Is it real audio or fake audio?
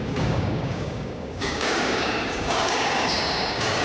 fake